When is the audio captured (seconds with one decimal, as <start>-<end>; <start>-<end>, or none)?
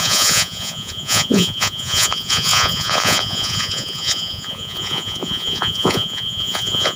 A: none